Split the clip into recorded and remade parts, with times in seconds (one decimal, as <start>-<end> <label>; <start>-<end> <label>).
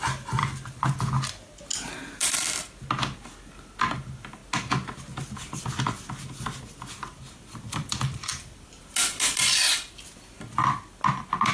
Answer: 0.0-7.7 recorded; 7.7-8.4 remade; 8.4-11.5 recorded